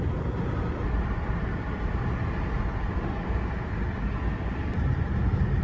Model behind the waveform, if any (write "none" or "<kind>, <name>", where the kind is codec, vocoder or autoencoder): none